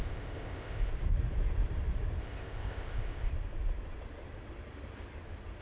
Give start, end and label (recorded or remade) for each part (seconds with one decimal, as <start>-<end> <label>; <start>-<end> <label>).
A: 0.0-0.9 remade; 0.9-2.2 recorded; 2.2-3.3 remade; 3.3-5.6 recorded